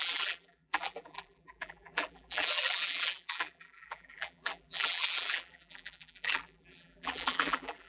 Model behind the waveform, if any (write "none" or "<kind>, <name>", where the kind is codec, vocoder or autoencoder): vocoder, BigVGAN v2